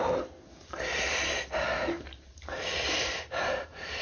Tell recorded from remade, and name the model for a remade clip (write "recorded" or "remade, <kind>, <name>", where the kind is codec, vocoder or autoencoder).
remade, vocoder, BigVGAN v2